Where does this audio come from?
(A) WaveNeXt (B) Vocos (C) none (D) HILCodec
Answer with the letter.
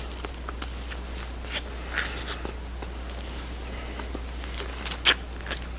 C